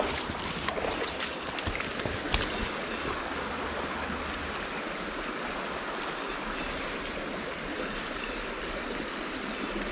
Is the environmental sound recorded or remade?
recorded